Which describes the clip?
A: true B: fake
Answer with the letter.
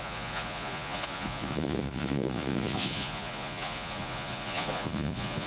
B